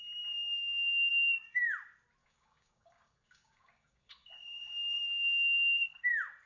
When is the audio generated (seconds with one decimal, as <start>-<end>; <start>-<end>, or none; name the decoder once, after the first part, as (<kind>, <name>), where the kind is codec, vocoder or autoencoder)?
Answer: 2.2-6.1 (codec, DAC)